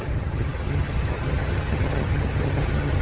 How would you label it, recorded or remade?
remade